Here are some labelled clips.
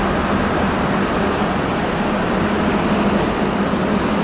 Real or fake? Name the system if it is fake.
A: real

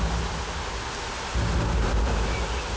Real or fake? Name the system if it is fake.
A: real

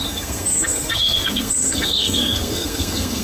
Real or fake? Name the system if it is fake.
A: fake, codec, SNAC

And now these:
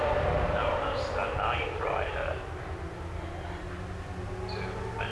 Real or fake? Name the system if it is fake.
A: real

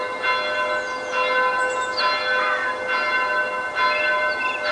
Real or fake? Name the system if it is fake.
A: real